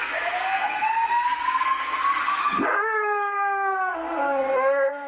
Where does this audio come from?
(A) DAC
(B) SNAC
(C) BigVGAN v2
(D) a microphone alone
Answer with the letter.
B